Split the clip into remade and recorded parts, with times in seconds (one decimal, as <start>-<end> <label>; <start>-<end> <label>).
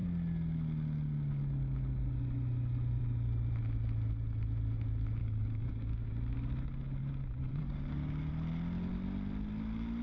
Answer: 0.0-5.2 recorded; 5.2-6.1 remade; 6.1-7.0 recorded; 7.0-8.3 remade; 8.3-10.0 recorded